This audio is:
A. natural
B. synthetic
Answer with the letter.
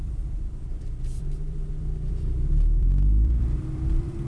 B